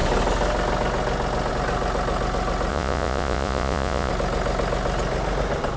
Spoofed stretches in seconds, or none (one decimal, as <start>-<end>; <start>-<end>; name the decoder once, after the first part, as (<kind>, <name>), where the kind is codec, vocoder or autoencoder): 2.7-4.1 (vocoder, Vocos)